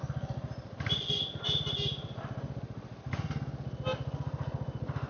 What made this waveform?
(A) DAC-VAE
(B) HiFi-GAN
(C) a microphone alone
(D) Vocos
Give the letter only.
C